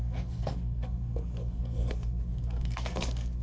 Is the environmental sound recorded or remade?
remade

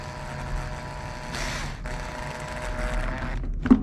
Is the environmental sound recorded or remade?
recorded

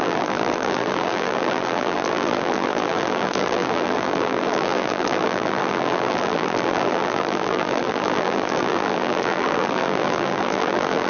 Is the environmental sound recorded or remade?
remade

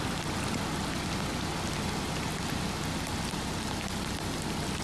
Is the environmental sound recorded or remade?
recorded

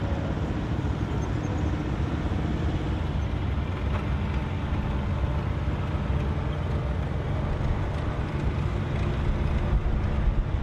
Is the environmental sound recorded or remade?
recorded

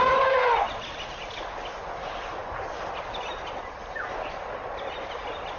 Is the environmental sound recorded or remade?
recorded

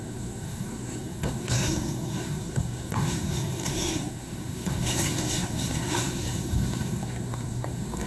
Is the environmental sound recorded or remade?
remade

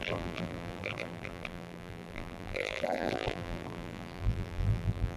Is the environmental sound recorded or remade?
remade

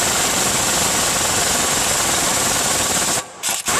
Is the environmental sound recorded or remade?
recorded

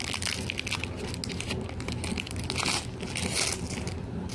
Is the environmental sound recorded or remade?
recorded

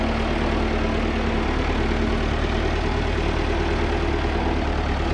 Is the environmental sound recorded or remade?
recorded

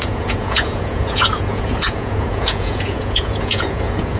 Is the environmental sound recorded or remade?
remade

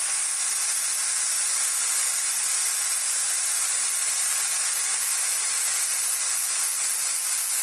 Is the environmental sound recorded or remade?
recorded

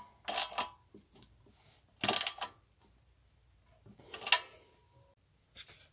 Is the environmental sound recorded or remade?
recorded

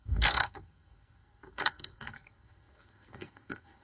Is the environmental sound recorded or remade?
remade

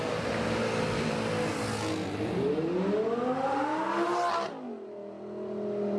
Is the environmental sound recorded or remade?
recorded